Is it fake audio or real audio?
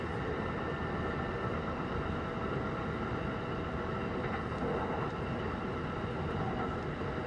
real